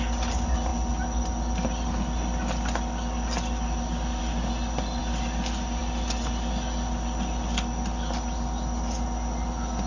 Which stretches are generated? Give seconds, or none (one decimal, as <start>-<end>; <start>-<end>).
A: none